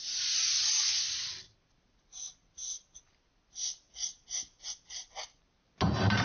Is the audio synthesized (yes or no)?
no